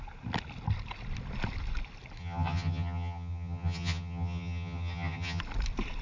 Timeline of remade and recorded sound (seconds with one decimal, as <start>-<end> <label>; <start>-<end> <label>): 0.0-2.2 recorded; 2.2-5.4 remade; 5.4-6.0 recorded